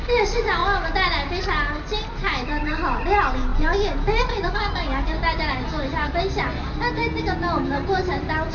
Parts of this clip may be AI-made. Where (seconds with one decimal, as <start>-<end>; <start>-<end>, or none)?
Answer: none